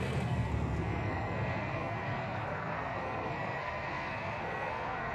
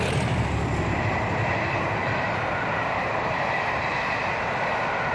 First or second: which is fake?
first